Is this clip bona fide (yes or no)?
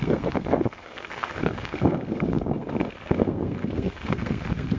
no